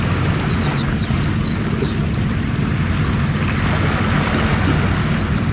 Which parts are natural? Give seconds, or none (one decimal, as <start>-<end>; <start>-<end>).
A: 0.0-1.4; 2.0-5.5

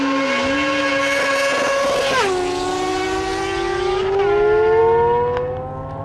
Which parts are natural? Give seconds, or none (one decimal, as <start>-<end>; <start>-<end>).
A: 0.0-6.0